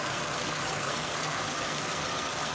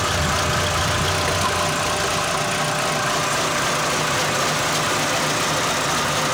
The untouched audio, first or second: second